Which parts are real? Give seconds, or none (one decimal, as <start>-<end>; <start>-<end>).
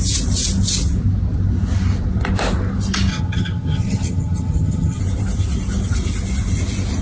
0.0-3.1; 5.0-7.0